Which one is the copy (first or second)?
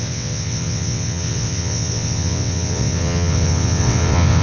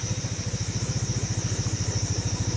first